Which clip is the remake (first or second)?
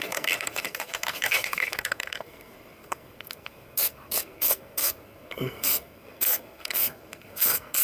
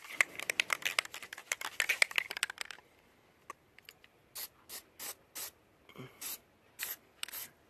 first